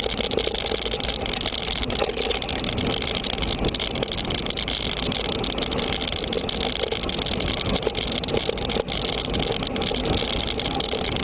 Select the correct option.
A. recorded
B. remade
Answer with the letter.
A